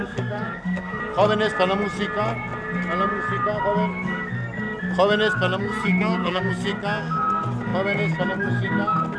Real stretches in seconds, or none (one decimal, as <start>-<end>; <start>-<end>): 1.0-5.6; 6.5-9.2